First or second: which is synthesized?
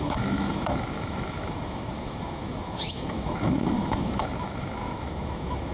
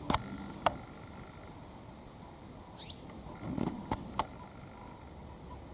first